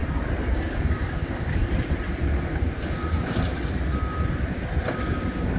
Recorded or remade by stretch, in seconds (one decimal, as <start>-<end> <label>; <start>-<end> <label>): 0.0-0.5 recorded; 0.5-1.6 remade; 1.6-5.0 recorded; 5.0-5.6 remade

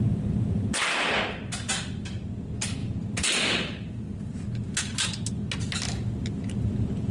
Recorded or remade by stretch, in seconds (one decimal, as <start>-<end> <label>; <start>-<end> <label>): 0.0-7.1 recorded